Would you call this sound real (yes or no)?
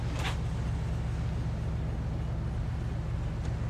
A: yes